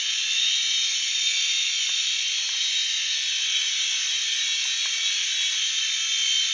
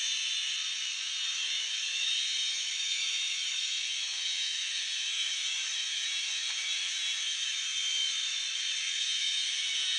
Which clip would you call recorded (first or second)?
first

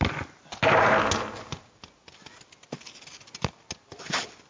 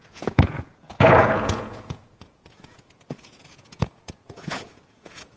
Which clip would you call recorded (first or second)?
first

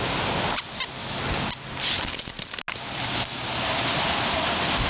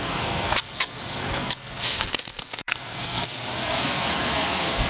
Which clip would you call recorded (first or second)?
first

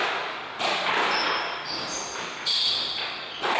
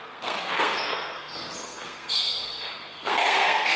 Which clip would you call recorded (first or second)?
first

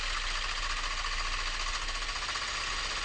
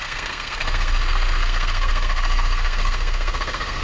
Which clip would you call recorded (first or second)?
first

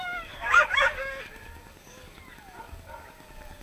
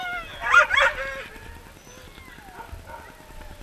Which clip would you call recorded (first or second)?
second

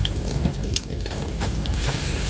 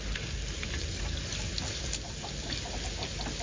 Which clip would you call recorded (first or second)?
second